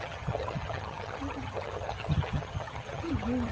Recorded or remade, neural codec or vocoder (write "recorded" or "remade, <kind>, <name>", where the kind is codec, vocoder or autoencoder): remade, vocoder, HiFi-GAN